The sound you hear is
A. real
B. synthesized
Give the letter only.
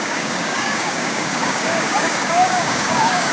B